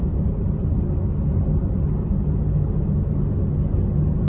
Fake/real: real